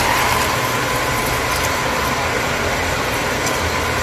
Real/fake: real